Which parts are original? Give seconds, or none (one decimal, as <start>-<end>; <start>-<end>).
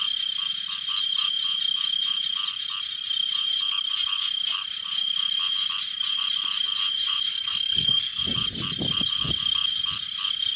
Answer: 0.0-7.3; 8.2-10.6